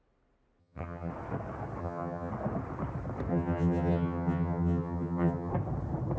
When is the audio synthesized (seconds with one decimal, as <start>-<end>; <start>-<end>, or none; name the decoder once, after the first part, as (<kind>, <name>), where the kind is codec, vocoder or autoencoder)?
0.6-1.1 (vocoder, HiFi-GAN); 1.8-2.3; 3.3-5.5